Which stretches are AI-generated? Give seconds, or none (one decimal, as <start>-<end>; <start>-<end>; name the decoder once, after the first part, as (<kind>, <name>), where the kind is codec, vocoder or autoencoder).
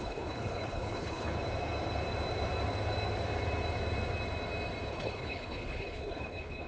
0.0-1.3 (codec, HILCodec); 4.9-6.7